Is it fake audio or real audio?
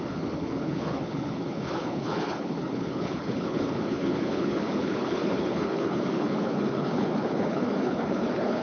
fake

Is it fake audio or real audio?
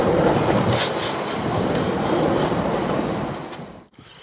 real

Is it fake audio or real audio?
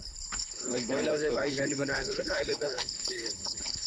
fake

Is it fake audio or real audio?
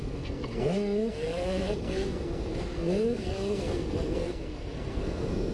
fake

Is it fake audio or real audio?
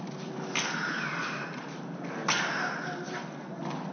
real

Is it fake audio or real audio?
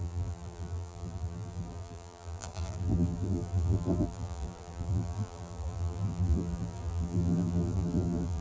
fake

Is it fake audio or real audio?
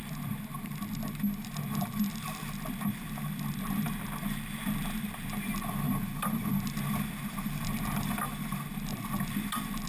real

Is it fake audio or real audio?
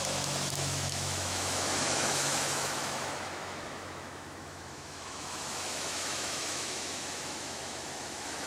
fake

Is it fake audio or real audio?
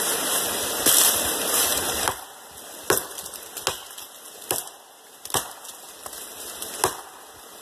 real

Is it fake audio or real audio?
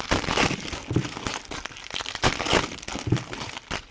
real